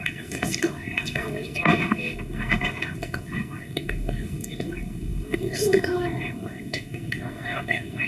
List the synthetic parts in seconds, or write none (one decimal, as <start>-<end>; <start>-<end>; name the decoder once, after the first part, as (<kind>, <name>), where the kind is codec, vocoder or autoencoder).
0.0-8.1 (codec, SNAC)